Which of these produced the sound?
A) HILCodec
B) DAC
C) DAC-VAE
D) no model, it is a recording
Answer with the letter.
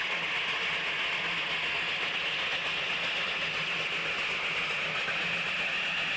D